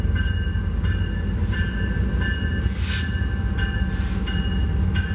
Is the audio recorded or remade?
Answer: recorded